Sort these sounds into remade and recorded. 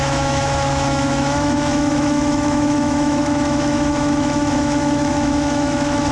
remade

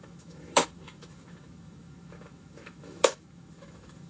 remade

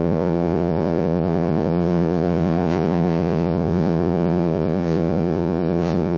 remade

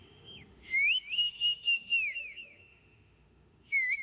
remade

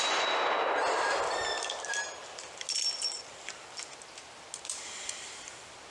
recorded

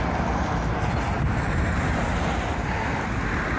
recorded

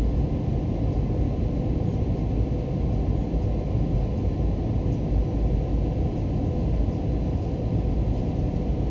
recorded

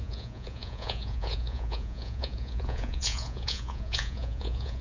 remade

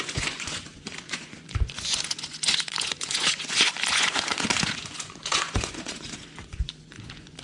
remade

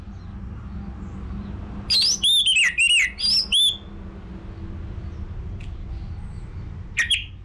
recorded